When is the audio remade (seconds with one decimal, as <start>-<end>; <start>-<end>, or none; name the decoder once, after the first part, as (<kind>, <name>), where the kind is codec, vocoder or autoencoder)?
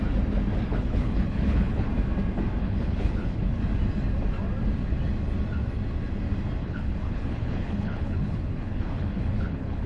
0.7-1.9 (codec, HILCodec); 2.6-3.6; 6.6-9.9